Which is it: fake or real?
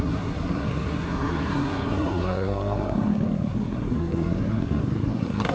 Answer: fake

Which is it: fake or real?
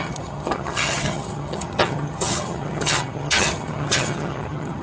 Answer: fake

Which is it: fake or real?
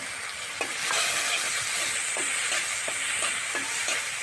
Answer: real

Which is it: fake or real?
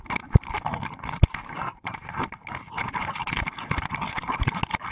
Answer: real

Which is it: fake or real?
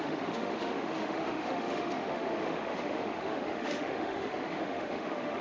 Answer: fake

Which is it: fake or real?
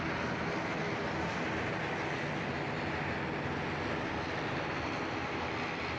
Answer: real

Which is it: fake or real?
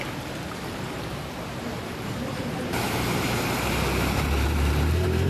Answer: fake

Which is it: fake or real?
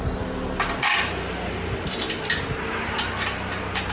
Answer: real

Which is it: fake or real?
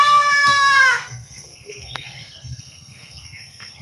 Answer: fake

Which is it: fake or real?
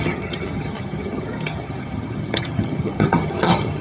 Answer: fake